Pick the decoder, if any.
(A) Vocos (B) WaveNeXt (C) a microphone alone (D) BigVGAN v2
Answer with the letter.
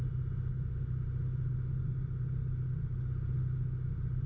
C